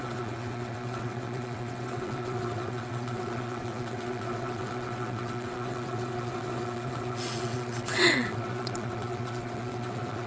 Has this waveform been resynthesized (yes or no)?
yes